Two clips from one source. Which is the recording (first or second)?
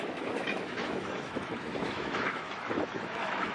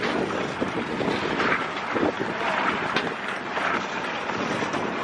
second